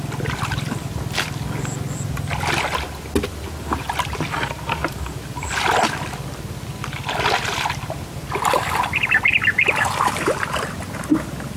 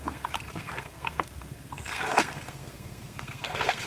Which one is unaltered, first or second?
first